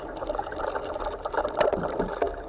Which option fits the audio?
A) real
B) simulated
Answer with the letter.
A